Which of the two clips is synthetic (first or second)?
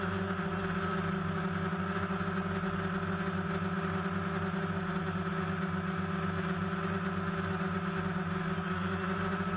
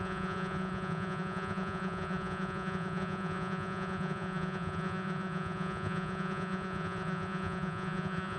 second